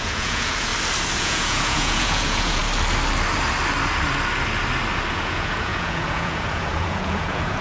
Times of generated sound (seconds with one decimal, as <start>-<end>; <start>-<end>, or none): 0.0-0.7; 1.2-2.6; 5.1-7.6